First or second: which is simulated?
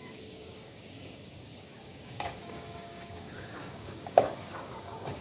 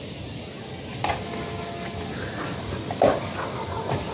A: first